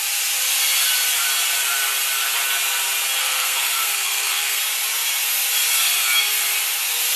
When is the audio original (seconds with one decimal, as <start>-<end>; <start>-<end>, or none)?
0.0-3.2; 4.6-7.2